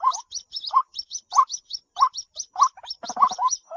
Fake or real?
real